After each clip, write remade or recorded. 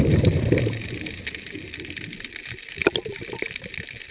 recorded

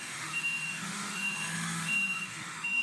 remade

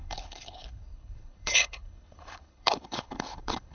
remade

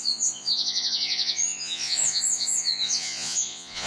remade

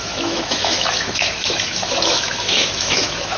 remade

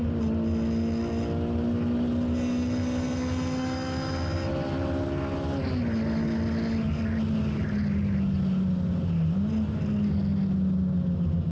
recorded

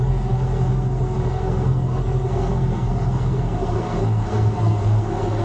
remade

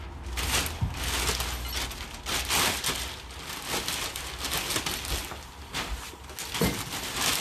recorded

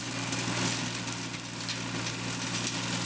recorded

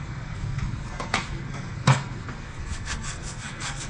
remade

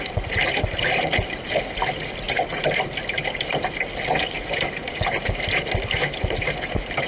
recorded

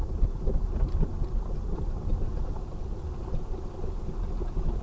recorded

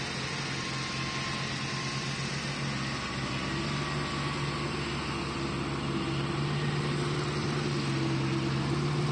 recorded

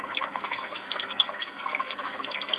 remade